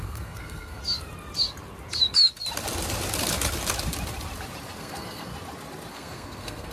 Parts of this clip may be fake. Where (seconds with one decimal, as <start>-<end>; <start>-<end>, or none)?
0.0-0.8; 4.8-5.3; 5.9-6.7